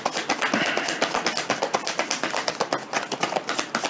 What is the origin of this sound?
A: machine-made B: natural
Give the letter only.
B